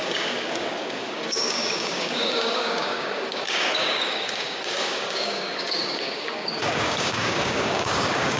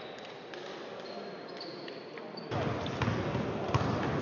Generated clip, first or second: first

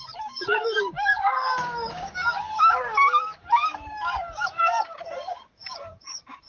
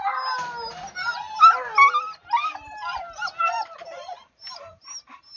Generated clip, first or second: first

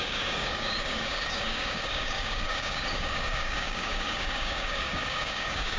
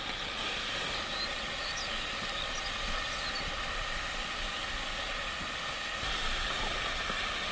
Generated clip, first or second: first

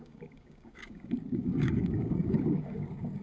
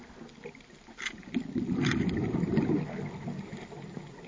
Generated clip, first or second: first